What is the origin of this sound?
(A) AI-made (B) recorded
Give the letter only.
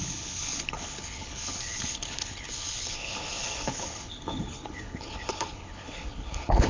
A